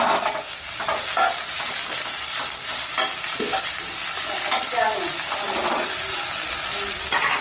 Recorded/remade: recorded